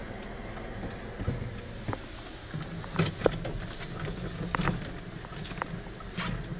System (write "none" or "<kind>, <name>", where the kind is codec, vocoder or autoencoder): none